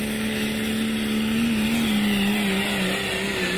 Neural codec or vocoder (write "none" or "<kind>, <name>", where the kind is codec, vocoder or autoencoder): none